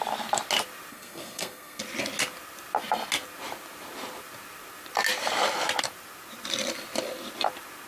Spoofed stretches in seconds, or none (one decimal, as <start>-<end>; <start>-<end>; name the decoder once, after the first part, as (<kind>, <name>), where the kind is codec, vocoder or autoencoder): 0.9-1.8 (codec, SNAC)